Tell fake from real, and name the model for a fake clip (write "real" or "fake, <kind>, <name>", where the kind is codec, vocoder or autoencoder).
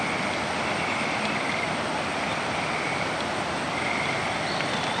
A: real